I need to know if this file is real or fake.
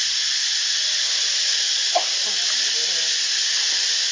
real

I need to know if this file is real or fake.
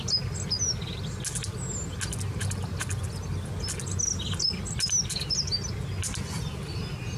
real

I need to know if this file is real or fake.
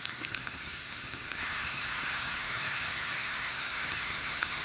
fake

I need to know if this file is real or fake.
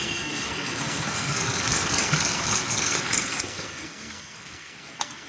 fake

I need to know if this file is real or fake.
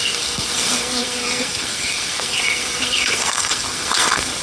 fake